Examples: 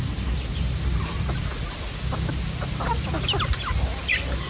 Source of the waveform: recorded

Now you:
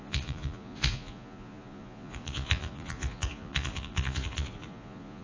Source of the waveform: remade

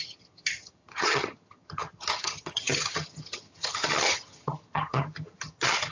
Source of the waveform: remade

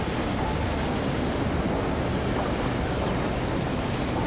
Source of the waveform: recorded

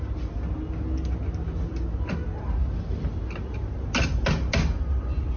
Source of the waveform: recorded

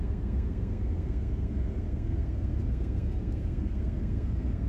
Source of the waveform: remade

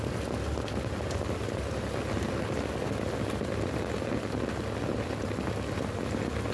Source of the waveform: recorded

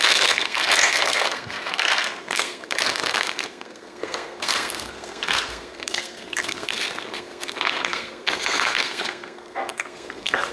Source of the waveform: remade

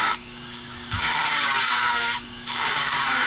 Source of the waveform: remade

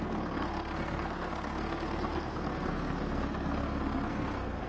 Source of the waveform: remade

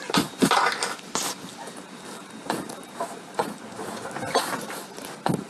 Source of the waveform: recorded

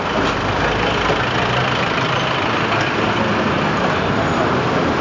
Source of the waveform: recorded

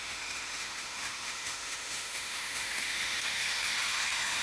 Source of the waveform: remade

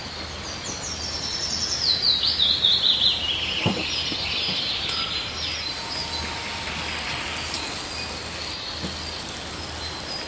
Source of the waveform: recorded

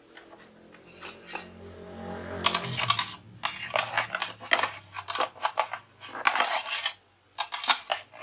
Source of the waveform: recorded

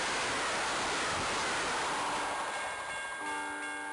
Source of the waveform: recorded